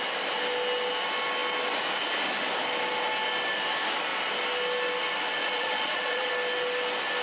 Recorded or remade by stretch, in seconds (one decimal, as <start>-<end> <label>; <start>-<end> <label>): 0.0-5.4 recorded; 5.4-6.3 remade; 6.3-7.2 recorded